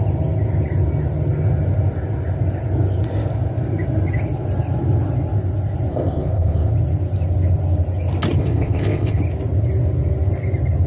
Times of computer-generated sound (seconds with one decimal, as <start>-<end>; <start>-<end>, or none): 5.9-6.7; 8.4-9.2